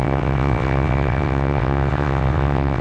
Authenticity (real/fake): fake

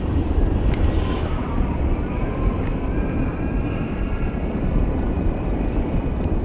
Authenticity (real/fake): fake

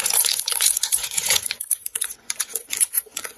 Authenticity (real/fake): fake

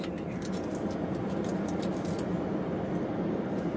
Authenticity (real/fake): real